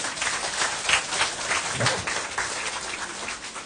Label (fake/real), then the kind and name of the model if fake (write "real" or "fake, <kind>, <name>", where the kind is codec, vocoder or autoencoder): real